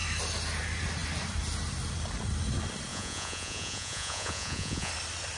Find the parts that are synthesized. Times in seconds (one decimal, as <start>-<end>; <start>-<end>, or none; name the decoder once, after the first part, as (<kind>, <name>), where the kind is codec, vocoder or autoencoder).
2.9-4.9 (vocoder, Vocos)